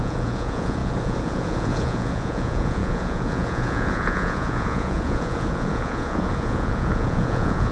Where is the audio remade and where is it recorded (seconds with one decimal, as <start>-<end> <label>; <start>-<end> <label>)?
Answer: 0.0-7.7 remade